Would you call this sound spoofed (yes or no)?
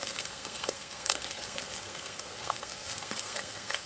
yes